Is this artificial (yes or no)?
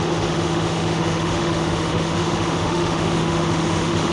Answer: yes